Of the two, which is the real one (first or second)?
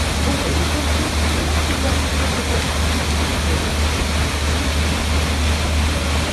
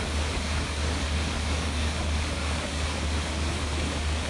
first